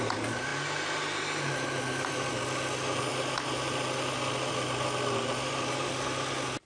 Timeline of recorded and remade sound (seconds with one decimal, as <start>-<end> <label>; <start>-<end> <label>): 0.0-6.6 recorded